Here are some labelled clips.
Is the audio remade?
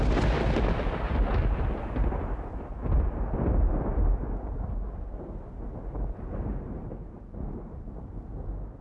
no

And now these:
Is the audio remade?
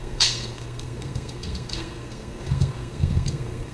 yes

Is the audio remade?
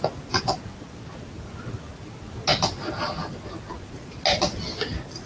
no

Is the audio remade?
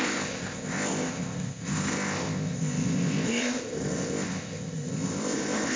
yes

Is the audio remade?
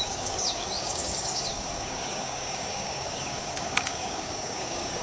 yes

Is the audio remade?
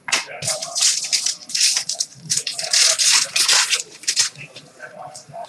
yes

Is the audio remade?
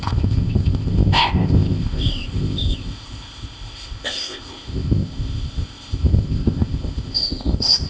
yes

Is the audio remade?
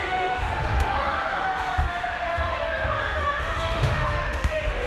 yes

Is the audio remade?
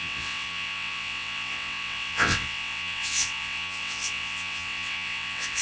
yes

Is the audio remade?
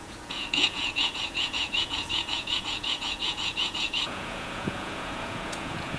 yes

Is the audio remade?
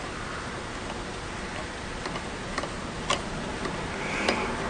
no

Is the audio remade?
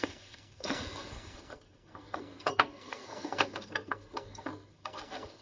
yes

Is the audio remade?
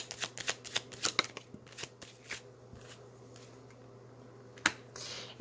no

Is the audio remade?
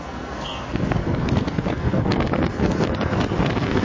yes